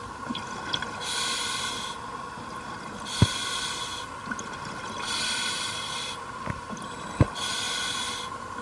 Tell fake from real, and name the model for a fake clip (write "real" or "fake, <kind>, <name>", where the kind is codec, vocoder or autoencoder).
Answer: real